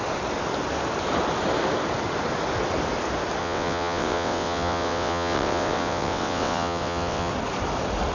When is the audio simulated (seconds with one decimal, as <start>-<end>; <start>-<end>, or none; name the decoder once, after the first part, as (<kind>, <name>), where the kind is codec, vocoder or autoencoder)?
3.4-7.3 (vocoder, WaveNeXt)